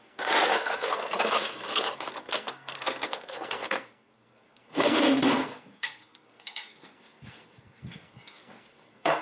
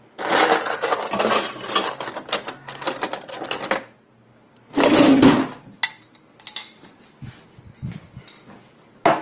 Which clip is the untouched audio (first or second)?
second